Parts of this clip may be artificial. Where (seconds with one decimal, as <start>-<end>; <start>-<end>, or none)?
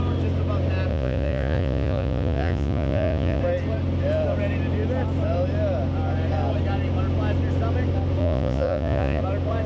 0.9-3.4; 8.2-9.2